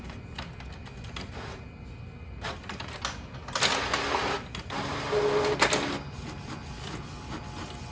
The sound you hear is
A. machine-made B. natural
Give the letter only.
B